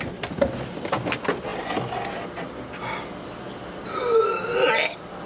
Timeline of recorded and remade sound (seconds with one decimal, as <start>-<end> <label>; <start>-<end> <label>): 0.0-5.3 recorded